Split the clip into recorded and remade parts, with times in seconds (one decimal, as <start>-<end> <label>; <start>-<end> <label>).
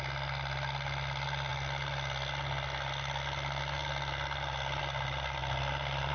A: 0.0-6.1 recorded